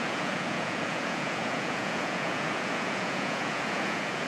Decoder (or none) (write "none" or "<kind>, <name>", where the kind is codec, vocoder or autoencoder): vocoder, Vocos